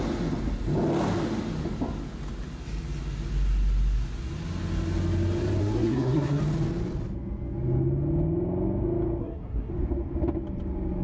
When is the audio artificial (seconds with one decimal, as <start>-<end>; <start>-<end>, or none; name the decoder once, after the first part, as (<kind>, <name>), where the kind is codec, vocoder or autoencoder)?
5.6-6.4 (codec, SNAC); 9.2-9.7